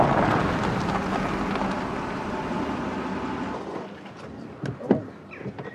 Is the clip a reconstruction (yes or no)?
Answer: yes